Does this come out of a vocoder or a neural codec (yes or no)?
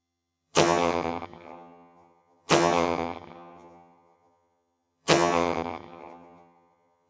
yes